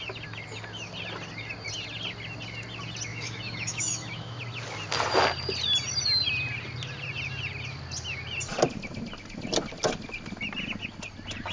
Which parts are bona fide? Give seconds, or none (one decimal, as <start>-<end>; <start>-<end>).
0.0-3.1; 4.4-11.5